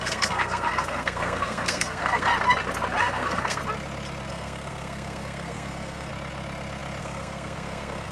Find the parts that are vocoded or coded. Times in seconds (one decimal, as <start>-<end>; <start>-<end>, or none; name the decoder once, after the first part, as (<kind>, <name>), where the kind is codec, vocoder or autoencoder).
0.0-2.3 (codec, SNAC); 3.0-3.6; 4.3-6.1; 7.0-8.1